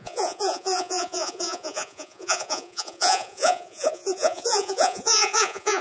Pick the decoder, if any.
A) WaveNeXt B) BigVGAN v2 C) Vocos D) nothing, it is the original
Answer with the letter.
C